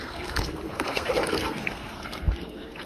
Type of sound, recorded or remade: remade